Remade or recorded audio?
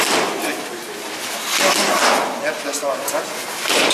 recorded